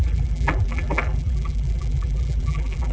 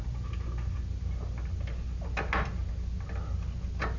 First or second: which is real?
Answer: second